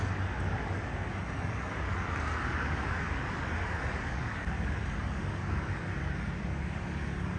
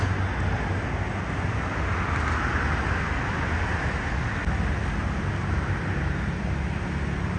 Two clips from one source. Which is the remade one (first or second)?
first